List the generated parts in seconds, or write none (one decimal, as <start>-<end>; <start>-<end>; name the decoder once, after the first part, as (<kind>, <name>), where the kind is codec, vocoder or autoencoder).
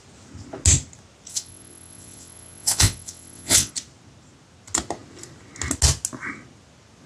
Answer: 1.3-3.7 (vocoder, WaveNeXt)